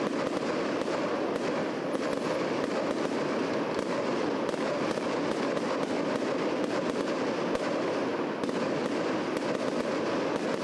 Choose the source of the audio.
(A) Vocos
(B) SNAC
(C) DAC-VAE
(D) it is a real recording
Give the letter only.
D